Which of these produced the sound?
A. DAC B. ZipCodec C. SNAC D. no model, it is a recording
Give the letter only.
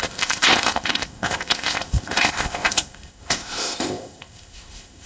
B